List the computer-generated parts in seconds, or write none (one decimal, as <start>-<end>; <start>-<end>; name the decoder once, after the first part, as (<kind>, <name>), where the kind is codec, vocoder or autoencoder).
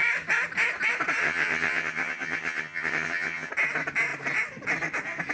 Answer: 1.2-3.5 (vocoder, HiFi-GAN)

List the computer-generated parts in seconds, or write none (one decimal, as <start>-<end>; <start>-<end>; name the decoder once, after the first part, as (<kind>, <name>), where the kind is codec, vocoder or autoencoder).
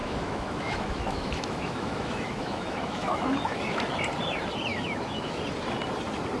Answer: 0.0-3.8 (autoencoder, DAC-VAE); 4.7-5.4